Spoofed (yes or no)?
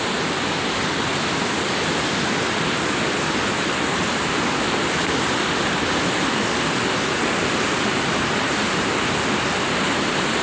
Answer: no